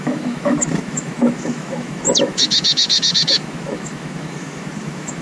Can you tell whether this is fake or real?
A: fake